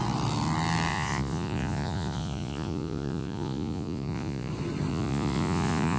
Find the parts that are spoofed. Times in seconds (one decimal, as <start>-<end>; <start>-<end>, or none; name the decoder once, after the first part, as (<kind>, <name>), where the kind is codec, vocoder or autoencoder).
0.9-4.5 (vocoder, Vocos); 4.9-6.0